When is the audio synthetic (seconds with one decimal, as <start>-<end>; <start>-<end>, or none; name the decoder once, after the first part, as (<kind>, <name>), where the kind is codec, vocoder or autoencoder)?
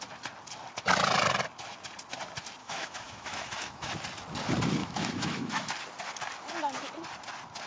2.6-3.9 (autoencoder, DAC-VAE); 4.8-5.7